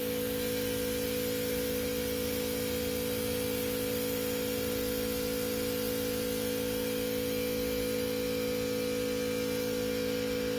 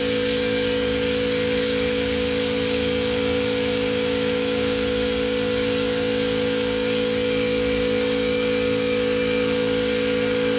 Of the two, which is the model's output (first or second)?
second